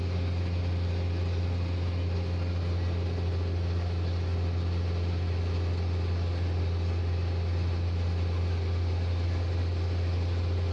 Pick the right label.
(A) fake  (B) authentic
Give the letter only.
B